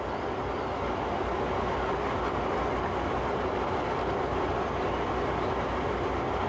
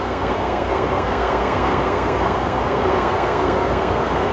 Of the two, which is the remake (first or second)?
second